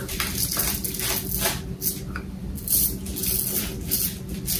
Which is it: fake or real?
real